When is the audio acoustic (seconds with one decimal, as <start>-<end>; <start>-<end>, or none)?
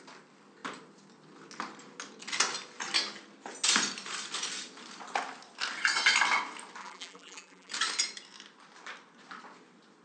0.0-6.8; 7.7-10.0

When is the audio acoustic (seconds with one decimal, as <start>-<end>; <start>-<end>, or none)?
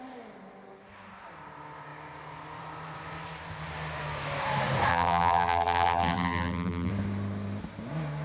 0.0-4.9; 6.9-8.2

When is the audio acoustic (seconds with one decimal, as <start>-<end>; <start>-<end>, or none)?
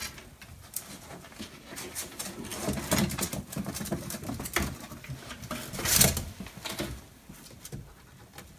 0.0-8.6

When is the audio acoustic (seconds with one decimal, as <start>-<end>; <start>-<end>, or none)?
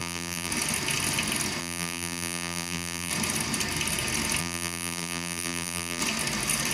0.5-1.6; 3.1-4.4; 6.0-6.7